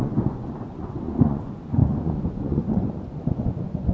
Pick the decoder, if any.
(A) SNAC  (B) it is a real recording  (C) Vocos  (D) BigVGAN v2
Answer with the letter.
C